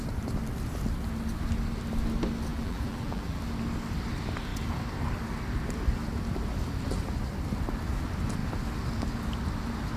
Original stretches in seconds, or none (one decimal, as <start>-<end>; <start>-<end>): 0.0-2.5; 3.4-10.0